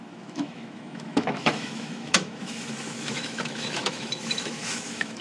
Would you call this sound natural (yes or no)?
no